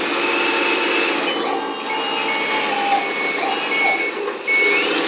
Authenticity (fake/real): real